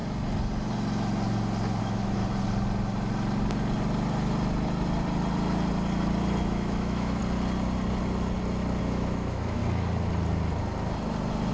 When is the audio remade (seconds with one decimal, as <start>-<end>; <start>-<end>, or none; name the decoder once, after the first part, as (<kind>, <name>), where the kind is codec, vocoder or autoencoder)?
1.8-2.2 (autoencoder, DAC-VAE); 6.4-7.2; 8.8-9.6